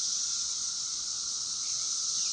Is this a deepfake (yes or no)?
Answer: yes